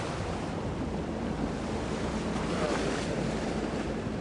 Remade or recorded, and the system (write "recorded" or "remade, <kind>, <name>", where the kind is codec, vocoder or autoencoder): remade, vocoder, BigVGAN v2